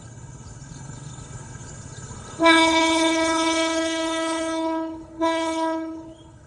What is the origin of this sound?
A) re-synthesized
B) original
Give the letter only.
A